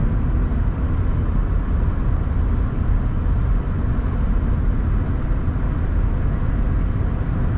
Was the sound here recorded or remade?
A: recorded